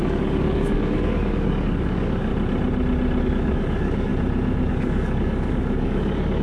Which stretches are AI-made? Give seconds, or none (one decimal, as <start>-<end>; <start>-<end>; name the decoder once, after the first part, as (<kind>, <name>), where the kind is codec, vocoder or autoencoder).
0.0-2.3 (codec, DAC); 3.2-4.1; 4.7-6.4